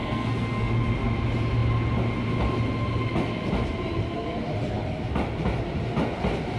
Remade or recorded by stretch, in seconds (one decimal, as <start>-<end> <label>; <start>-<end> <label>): 0.0-0.7 remade; 0.7-6.6 recorded